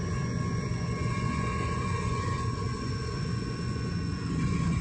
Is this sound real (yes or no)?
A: no